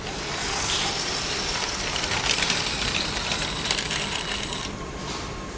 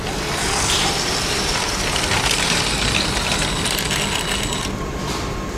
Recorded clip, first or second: second